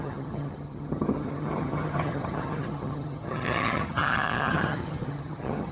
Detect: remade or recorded remade